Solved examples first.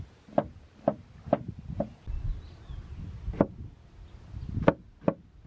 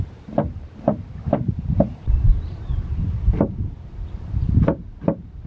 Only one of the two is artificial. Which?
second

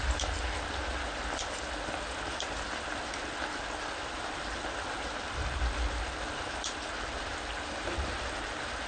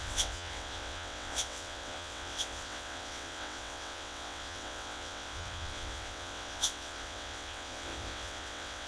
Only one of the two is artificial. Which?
second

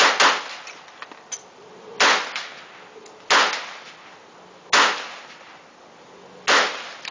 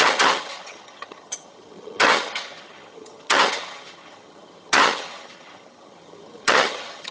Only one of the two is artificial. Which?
second